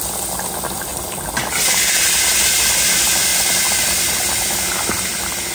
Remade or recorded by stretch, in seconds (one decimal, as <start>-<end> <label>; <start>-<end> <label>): 0.0-3.3 recorded; 3.3-3.8 remade; 3.8-5.5 recorded